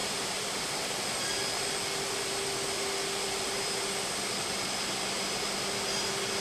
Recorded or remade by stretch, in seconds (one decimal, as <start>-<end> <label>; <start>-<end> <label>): 0.0-0.6 remade; 0.6-6.4 recorded